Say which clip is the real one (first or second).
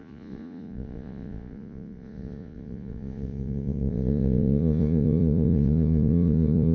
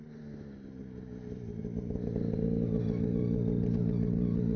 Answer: second